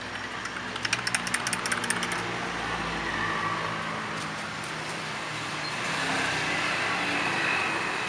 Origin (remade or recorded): recorded